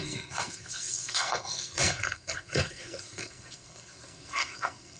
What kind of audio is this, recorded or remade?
remade